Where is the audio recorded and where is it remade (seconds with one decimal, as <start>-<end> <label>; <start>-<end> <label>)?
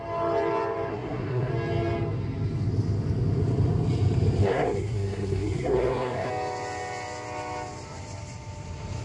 0.0-0.9 recorded; 0.9-1.5 remade; 1.5-4.4 recorded; 4.4-6.3 remade; 6.3-9.0 recorded